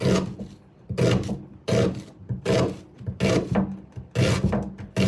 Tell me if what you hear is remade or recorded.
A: recorded